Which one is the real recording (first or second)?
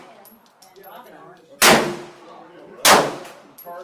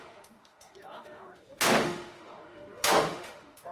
first